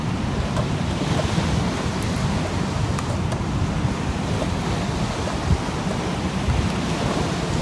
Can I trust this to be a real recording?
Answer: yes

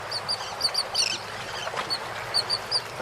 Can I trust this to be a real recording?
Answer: yes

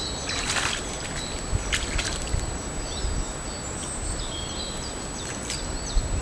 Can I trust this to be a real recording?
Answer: yes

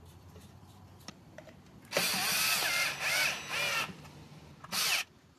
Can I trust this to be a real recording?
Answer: yes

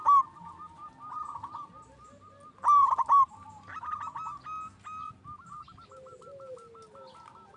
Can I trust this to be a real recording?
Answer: yes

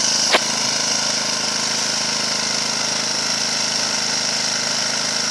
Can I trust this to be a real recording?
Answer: yes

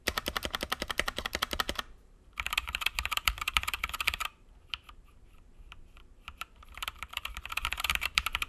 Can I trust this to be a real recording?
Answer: no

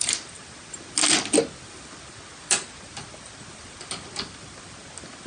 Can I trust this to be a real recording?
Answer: yes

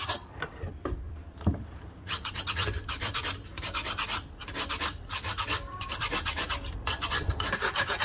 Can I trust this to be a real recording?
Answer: no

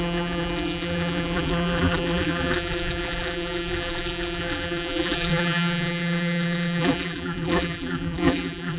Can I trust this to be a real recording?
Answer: no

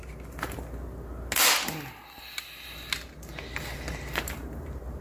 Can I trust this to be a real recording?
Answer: yes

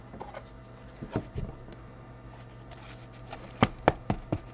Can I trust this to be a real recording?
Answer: yes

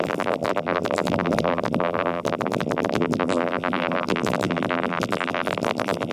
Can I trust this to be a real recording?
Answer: no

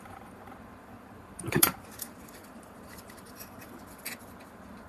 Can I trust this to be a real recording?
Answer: no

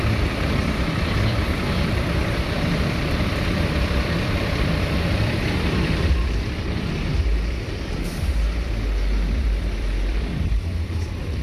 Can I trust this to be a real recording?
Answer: no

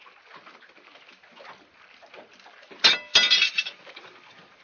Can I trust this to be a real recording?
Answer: yes